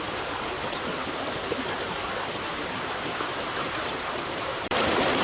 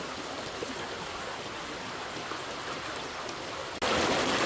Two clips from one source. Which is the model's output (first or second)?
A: first